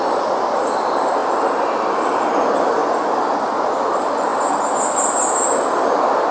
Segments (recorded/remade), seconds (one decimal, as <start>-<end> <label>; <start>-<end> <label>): 0.0-6.3 recorded